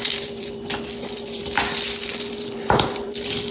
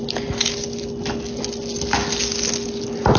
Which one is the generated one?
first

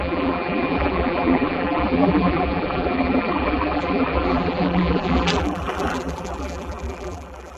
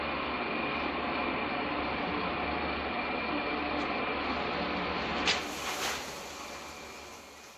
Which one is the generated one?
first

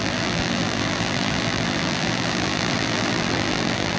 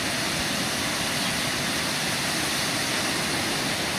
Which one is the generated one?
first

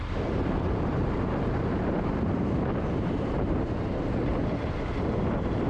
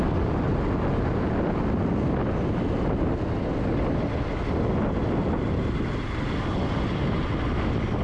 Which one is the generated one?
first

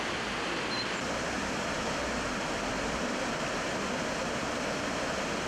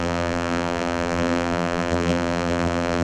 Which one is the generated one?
second